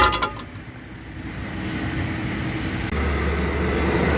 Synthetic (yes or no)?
no